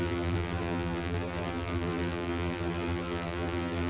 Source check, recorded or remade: remade